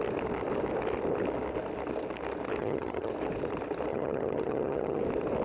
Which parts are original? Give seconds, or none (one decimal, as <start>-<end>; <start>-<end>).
0.0-2.6; 3.1-3.9; 5.0-5.4